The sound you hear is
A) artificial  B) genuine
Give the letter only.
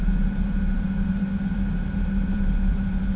A